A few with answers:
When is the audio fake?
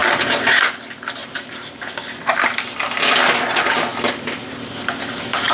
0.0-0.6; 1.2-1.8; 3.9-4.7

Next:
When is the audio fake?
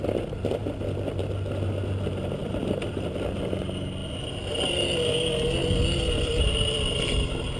2.4-3.1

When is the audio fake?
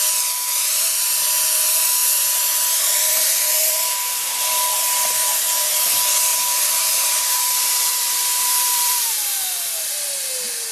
6.3-9.1